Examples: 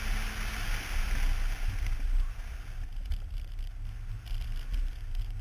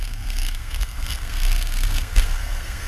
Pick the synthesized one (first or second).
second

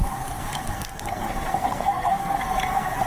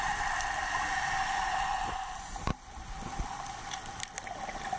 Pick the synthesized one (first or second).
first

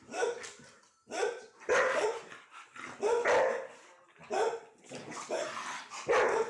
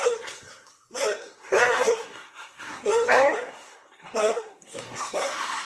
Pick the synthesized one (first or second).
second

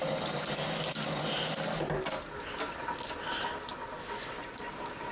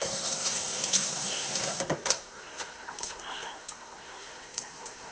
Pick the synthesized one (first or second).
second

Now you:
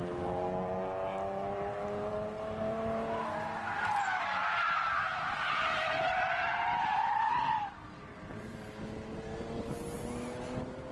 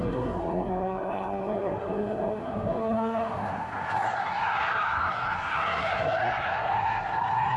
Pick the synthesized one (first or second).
second